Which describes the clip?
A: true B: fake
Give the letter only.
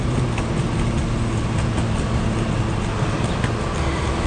A